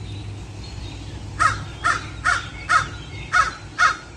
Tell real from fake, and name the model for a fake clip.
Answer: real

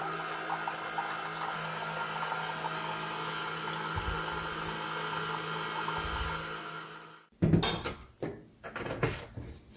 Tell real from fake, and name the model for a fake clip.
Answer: real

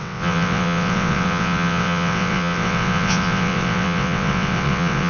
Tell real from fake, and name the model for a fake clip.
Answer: fake, vocoder, WaveNeXt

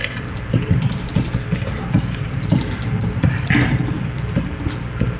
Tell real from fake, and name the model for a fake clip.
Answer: fake, vocoder, BigVGAN v2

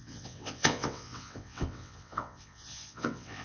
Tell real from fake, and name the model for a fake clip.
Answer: fake, vocoder, WaveNeXt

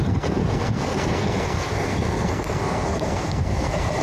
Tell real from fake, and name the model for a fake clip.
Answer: fake, codec, SNAC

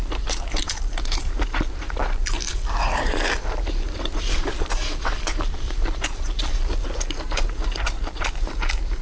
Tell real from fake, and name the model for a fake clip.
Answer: fake, vocoder, BigVGAN v2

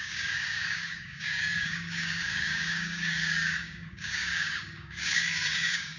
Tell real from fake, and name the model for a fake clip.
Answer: fake, codec, DAC